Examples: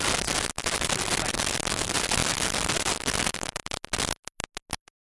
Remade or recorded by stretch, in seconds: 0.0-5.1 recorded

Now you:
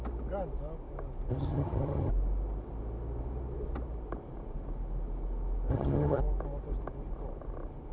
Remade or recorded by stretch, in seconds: 0.0-1.3 recorded; 1.3-2.1 remade; 2.1-5.7 recorded; 5.7-6.2 remade; 6.2-7.9 recorded

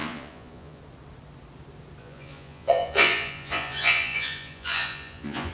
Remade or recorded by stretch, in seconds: 0.0-0.8 remade; 0.8-2.0 recorded; 2.0-5.5 remade

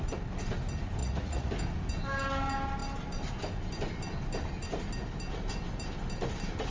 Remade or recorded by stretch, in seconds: 0.0-1.0 recorded; 1.0-1.5 remade; 1.5-6.7 recorded

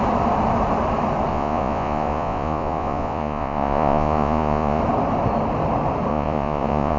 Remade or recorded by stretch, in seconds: 0.0-1.3 recorded; 1.3-4.8 remade; 4.8-6.1 recorded; 6.1-7.0 remade